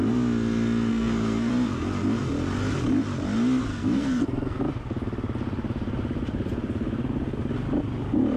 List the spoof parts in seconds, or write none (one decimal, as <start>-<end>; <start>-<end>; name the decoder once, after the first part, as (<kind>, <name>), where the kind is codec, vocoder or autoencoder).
0.9-1.5 (codec, SNAC); 3.7-4.6